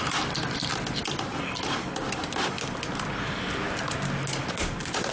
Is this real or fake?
real